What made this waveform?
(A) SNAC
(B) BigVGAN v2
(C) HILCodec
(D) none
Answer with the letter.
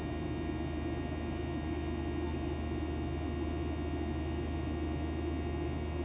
D